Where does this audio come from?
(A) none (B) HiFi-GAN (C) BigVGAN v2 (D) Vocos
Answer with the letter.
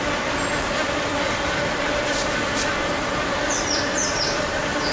A